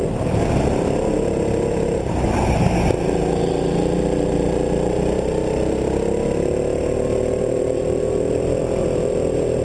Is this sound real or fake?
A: real